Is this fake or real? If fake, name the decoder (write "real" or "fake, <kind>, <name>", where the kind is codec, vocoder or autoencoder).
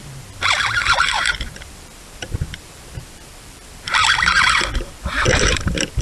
fake, vocoder, BigVGAN v2